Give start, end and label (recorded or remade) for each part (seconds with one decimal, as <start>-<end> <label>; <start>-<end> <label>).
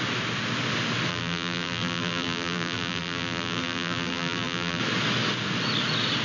0.0-1.1 recorded; 1.1-4.8 remade; 4.8-6.2 recorded